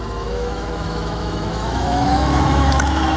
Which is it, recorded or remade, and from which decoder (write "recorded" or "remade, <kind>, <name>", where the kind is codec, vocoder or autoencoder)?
remade, autoencoder, DAC-VAE